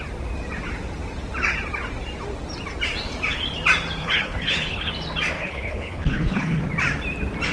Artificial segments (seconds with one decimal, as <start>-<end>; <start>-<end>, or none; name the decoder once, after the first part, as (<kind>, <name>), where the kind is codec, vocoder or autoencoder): 4.0-4.9 (codec, HILCodec); 5.4-6.6